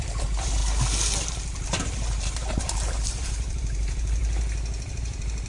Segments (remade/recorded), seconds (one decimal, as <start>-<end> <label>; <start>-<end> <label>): 0.0-0.6 remade; 0.6-1.2 recorded; 1.2-4.2 remade; 4.2-4.9 recorded; 4.9-5.5 remade